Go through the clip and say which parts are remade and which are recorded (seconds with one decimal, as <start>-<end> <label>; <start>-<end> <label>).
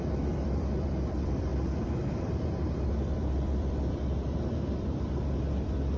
0.0-6.0 remade